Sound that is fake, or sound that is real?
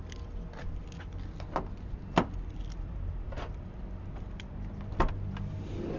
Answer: real